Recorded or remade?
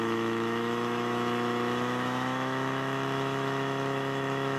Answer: remade